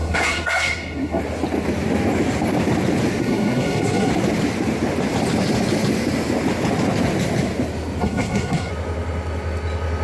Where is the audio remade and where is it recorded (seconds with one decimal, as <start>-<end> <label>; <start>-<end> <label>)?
0.0-1.2 remade; 1.2-3.2 recorded; 3.2-4.1 remade; 4.1-8.0 recorded; 8.0-8.7 remade; 8.7-10.0 recorded